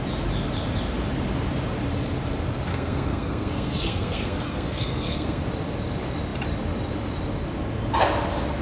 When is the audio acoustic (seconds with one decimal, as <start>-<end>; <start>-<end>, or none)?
0.0-2.7; 5.4-8.6